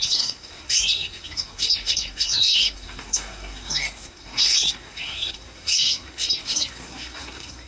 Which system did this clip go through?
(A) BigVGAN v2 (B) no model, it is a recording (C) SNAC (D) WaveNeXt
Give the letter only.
C